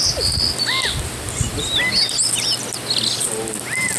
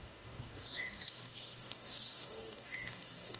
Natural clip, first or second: first